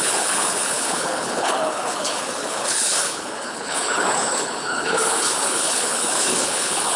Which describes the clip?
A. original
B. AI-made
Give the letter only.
B